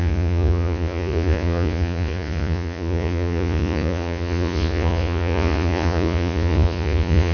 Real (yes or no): no